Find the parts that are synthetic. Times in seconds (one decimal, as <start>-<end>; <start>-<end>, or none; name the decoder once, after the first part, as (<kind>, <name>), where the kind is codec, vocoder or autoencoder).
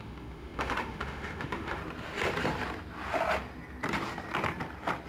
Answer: 0.0-1.8 (autoencoder, DAC-VAE)